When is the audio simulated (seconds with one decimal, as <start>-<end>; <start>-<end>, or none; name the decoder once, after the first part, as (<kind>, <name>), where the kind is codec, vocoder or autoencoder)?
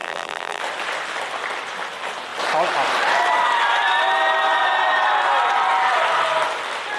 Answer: 0.0-0.6 (vocoder, BigVGAN v2)